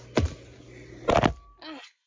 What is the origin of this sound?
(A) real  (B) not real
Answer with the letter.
A